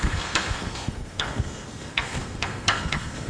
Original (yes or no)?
no